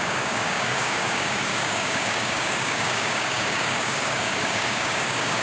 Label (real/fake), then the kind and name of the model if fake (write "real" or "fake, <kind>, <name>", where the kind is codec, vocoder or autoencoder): fake, codec, DAC